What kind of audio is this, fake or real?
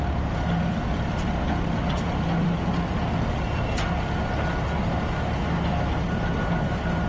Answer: real